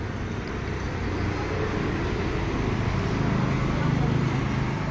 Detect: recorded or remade recorded